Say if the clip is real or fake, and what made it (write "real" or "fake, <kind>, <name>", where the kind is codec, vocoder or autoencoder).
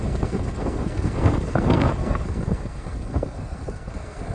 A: fake, codec, SNAC